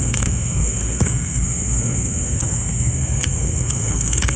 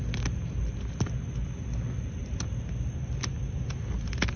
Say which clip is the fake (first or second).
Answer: first